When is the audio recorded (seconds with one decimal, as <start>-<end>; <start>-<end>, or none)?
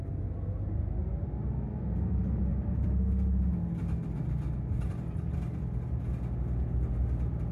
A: 0.0-2.5; 3.0-7.5